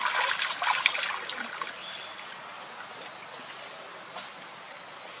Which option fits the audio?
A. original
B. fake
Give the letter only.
A